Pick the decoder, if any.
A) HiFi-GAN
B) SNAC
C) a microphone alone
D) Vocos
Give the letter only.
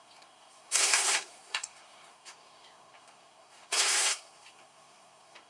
B